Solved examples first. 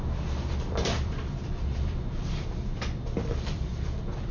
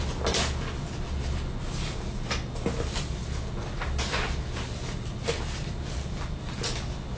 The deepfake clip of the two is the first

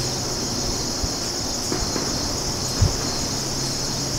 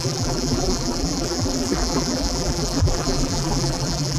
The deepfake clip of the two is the second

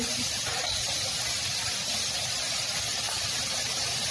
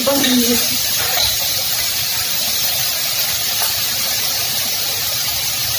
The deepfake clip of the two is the second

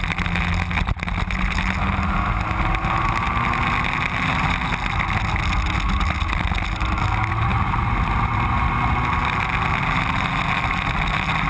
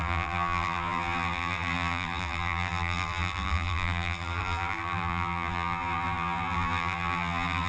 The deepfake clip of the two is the second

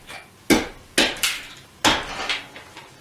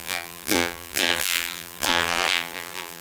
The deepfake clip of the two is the second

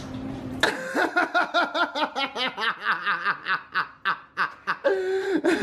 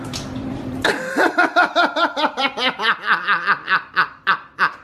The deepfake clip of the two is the second